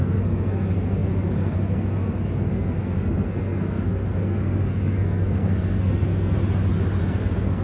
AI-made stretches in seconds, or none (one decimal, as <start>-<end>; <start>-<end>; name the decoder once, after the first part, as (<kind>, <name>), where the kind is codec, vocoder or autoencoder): 0.0-6.4 (codec, SNAC); 7.0-7.6